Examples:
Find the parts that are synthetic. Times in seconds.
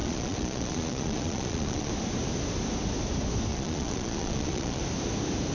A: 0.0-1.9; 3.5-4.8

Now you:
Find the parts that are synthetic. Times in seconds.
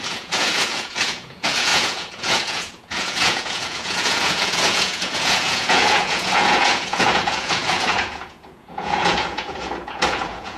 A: 0.0-10.6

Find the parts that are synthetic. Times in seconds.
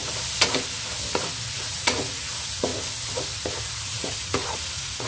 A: 1.5-2.7; 3.9-5.1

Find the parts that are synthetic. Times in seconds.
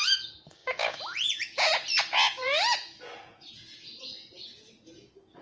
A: 0.0-5.4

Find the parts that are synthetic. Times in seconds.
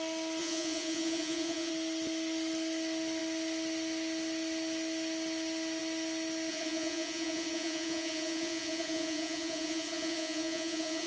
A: 0.4-1.7; 6.5-11.1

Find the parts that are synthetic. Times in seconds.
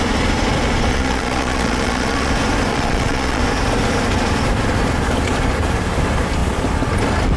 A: 0.9-2.3; 2.7-3.4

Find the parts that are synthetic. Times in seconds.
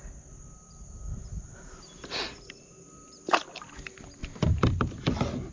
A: none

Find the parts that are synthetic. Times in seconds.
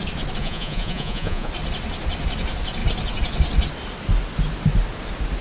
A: 0.4-1.5